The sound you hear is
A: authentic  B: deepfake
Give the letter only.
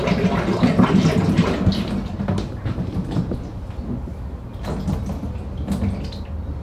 A